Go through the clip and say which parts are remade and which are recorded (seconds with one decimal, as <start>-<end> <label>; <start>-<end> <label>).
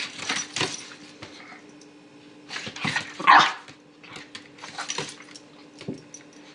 0.0-6.5 recorded